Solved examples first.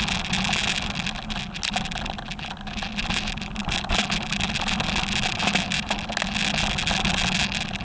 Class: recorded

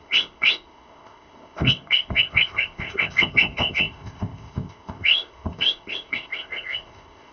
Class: remade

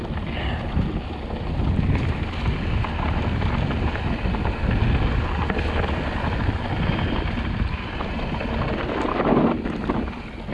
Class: recorded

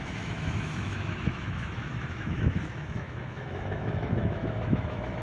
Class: remade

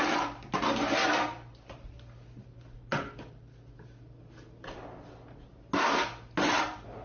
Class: recorded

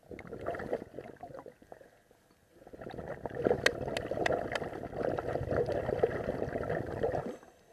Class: recorded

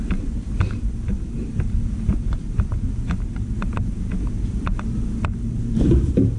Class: remade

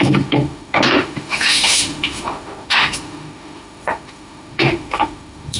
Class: remade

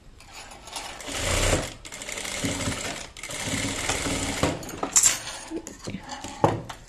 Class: recorded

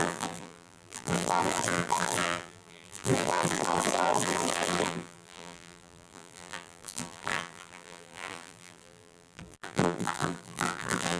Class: remade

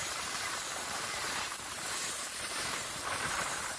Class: remade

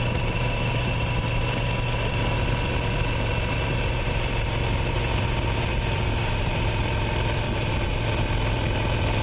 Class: remade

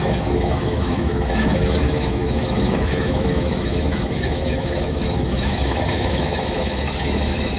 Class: remade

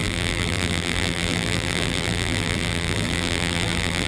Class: remade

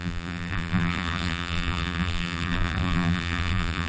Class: remade